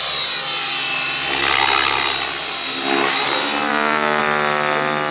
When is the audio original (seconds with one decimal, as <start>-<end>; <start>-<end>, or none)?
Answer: 0.0-3.7; 4.2-5.1